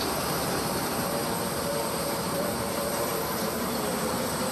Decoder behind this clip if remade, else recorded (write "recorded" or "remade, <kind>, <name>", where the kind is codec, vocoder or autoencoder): remade, vocoder, BigVGAN v2